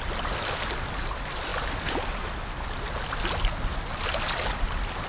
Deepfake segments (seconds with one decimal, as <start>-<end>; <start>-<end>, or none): none